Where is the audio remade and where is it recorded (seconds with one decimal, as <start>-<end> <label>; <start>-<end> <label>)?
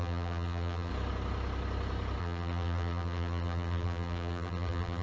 0.0-0.9 remade; 0.9-2.2 recorded; 2.2-5.0 remade